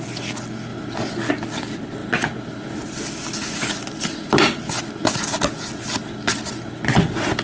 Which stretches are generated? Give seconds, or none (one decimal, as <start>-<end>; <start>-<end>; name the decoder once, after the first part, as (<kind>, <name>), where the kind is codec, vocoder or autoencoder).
none